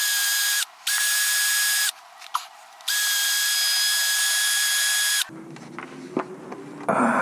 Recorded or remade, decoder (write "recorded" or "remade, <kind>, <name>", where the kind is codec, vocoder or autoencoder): recorded